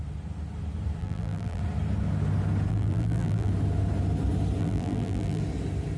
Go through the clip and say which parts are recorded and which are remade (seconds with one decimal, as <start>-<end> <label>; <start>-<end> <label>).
0.0-1.0 recorded; 1.0-1.6 remade; 1.6-2.7 recorded; 2.7-3.5 remade; 3.5-4.6 recorded; 4.6-5.4 remade; 5.4-6.0 recorded